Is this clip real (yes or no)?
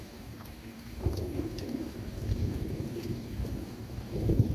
no